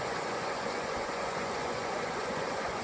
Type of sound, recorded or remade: remade